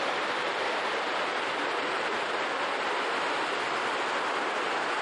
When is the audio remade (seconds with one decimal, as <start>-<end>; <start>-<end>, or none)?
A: none